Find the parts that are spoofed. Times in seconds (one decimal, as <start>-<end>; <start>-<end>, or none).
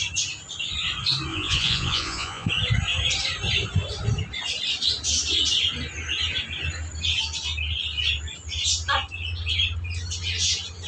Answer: 1.3-2.5